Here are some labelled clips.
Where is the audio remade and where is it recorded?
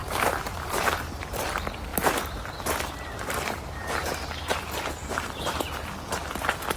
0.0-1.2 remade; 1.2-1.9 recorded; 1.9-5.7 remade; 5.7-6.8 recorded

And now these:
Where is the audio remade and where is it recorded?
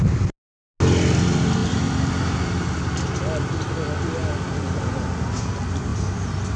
0.0-6.6 recorded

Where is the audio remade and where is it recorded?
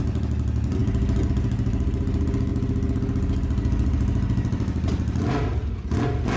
0.0-6.4 recorded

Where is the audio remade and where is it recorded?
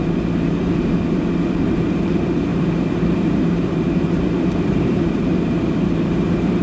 0.0-6.6 remade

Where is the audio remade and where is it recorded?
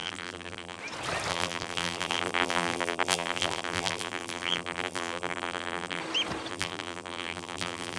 0.0-0.8 remade; 0.8-1.3 recorded; 1.3-6.0 remade; 6.0-6.5 recorded; 6.5-8.0 remade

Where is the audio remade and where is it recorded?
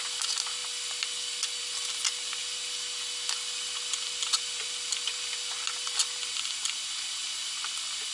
0.0-8.1 recorded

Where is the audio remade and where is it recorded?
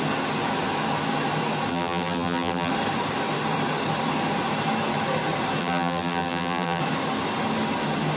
0.0-1.7 recorded; 1.7-2.7 remade; 2.7-5.6 recorded; 5.6-6.8 remade; 6.8-8.2 recorded